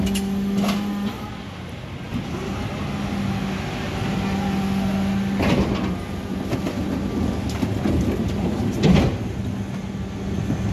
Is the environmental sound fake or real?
real